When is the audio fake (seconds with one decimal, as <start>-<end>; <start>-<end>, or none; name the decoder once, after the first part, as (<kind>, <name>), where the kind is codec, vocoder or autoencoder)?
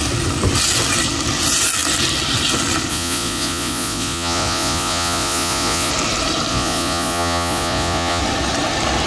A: 2.9-5.9 (vocoder, Vocos); 6.5-8.2